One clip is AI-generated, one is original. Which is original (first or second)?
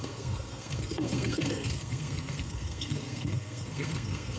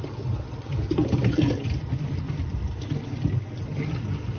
second